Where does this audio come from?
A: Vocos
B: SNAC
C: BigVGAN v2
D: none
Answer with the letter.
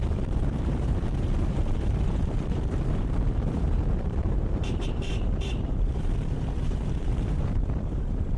C